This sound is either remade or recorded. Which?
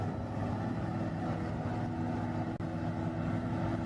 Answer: recorded